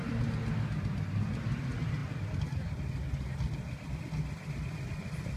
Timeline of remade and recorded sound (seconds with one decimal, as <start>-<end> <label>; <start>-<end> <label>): 0.0-5.4 recorded